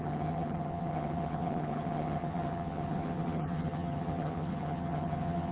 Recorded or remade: remade